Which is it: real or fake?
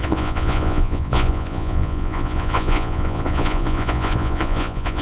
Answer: fake